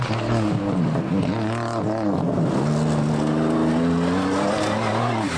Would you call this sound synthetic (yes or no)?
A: no